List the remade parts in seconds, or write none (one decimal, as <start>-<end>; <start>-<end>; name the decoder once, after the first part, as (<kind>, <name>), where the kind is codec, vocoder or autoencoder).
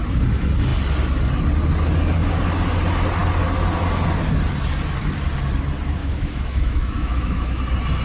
6.0-7.6 (autoencoder, DAC-VAE)